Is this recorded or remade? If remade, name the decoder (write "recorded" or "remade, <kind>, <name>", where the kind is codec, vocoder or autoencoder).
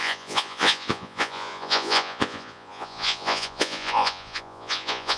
remade, vocoder, Vocos